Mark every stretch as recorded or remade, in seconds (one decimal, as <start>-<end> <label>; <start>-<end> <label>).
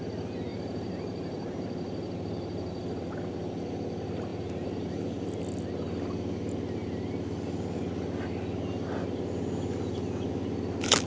0.0-0.5 recorded; 0.5-2.8 remade; 2.8-4.3 recorded; 4.3-5.4 remade; 5.4-11.1 recorded